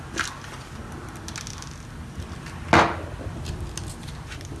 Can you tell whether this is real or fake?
real